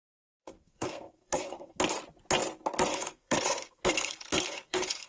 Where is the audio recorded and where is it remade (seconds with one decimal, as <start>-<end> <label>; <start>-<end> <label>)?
0.0-0.4 recorded; 0.4-1.8 remade; 1.8-2.9 recorded; 2.9-5.1 remade